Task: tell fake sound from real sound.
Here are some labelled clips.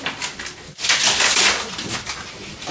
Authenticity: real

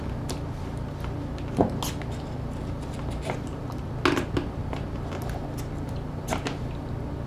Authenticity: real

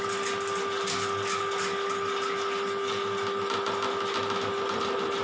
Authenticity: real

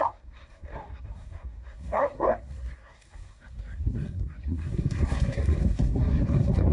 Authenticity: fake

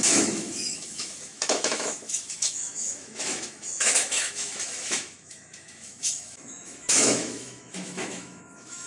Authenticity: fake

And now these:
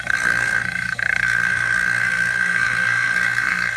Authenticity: fake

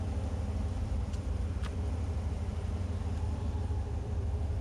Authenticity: fake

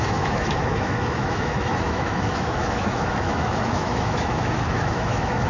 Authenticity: fake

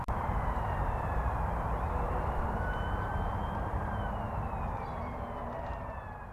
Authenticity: fake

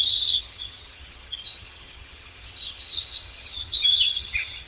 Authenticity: fake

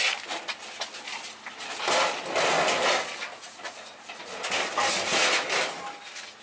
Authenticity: real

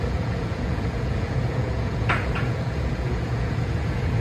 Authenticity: fake